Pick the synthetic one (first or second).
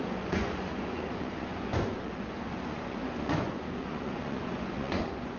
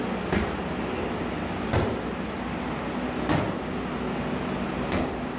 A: first